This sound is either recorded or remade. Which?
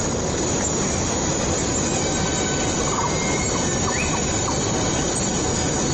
recorded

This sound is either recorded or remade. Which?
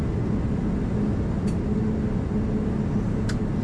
recorded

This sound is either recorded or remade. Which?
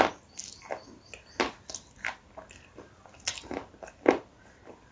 recorded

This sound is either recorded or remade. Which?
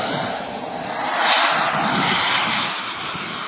recorded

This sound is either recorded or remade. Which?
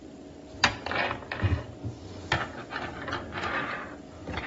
recorded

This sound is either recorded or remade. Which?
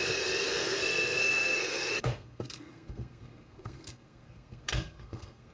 remade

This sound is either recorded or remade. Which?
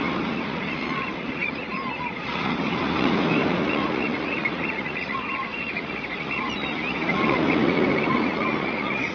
remade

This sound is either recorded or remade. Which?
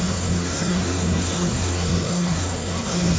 remade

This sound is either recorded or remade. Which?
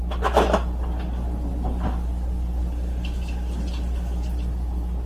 recorded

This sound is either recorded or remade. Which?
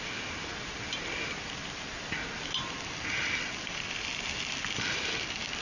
remade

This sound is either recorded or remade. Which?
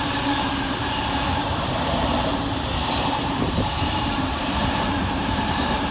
remade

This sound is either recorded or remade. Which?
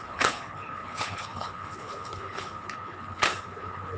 remade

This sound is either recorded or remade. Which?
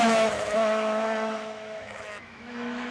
remade